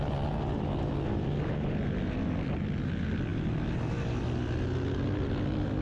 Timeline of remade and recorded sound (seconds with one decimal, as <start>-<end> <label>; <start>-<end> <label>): 0.0-5.8 recorded